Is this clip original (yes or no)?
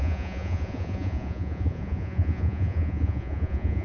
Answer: no